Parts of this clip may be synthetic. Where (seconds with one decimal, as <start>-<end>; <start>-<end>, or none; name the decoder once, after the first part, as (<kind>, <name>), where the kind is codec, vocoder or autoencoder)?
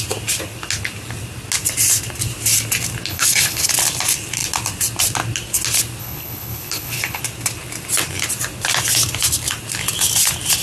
3.1-3.7 (codec, HILCodec); 6.0-7.2